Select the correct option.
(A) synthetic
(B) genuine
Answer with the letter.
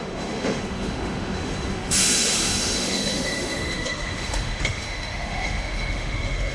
A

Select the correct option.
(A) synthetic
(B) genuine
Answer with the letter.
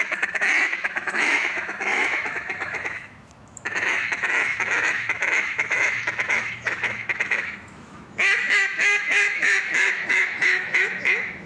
A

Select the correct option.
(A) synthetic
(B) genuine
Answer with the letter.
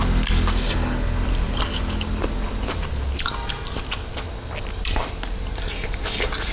B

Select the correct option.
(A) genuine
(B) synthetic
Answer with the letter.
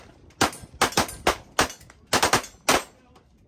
A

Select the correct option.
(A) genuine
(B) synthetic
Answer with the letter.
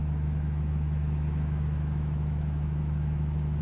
B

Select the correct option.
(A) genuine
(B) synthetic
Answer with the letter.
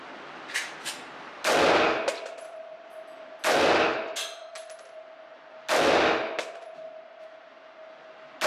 A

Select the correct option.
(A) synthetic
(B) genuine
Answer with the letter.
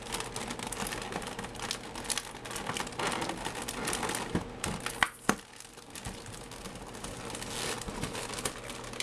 B